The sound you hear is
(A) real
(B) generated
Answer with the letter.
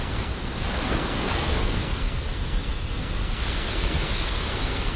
B